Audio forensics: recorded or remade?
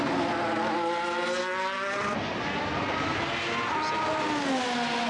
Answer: recorded